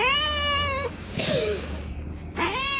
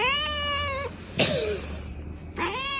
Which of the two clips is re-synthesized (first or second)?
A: first